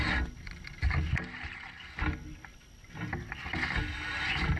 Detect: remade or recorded recorded